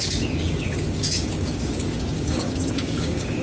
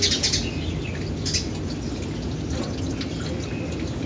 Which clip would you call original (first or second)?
second